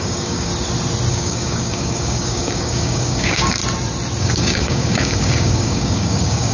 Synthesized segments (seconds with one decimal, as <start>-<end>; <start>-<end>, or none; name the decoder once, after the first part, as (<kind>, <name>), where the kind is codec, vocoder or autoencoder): 0.0-0.5 (codec, DAC); 1.1-3.6; 4.2-6.5